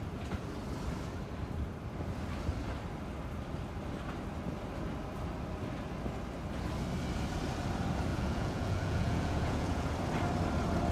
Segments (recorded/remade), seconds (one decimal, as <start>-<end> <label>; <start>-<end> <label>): 0.0-8.1 recorded; 8.1-9.9 remade; 9.9-10.9 recorded